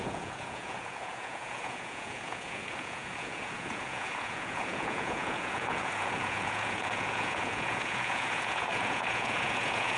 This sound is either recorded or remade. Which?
remade